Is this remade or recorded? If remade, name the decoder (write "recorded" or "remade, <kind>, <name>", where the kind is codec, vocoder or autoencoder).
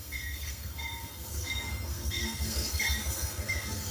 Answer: remade, codec, SNAC